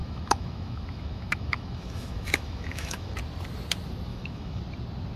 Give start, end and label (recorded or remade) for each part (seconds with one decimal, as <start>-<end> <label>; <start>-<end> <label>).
0.0-3.1 remade; 3.1-4.1 recorded; 4.1-4.6 remade; 4.6-5.2 recorded